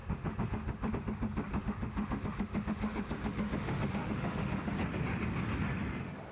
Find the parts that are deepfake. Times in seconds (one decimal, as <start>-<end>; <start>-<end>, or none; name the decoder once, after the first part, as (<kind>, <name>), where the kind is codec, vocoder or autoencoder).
0.0-0.9 (autoencoder, DAC-VAE); 1.5-4.7